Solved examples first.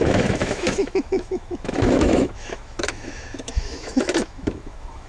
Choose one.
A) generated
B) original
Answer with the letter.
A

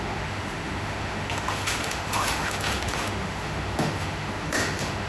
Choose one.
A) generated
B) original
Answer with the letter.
A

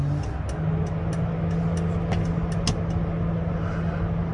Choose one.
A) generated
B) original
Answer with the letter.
B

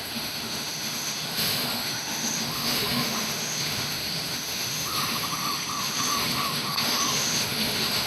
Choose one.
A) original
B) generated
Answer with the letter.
B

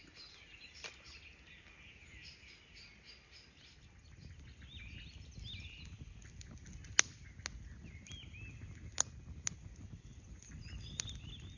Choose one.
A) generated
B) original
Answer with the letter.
B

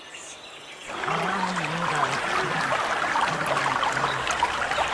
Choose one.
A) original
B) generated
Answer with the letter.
A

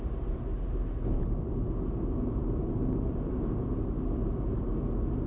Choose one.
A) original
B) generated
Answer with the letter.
A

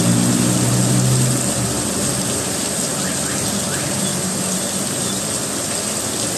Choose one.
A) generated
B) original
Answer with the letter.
B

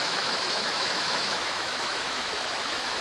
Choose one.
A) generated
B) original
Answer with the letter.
A